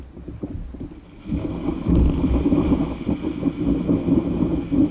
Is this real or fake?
real